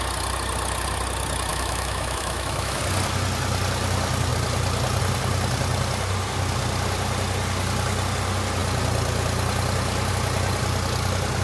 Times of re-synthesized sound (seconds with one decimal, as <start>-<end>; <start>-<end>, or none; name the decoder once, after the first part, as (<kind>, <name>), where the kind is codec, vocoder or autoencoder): 1.5-2.8 (autoencoder, DAC-VAE)